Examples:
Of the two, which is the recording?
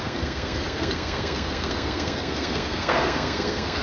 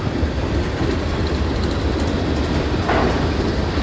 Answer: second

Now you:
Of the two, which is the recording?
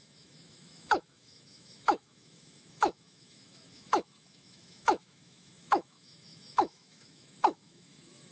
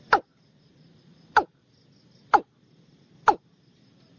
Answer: second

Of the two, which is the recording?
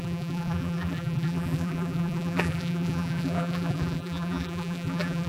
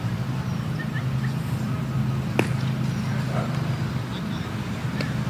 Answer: second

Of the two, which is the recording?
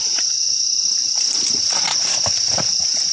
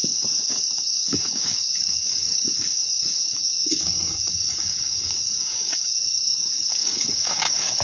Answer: first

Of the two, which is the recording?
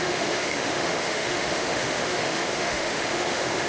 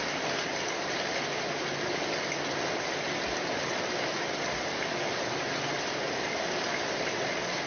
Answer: second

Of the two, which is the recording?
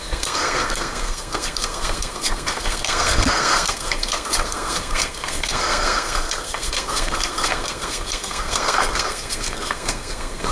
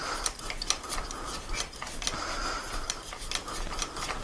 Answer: second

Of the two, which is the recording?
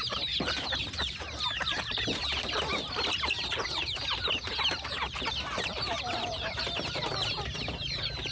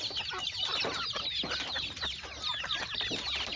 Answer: second